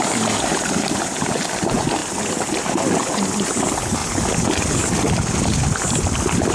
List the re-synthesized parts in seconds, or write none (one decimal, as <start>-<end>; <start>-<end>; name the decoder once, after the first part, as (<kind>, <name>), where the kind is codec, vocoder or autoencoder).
2.0-2.6 (vocoder, BigVGAN v2)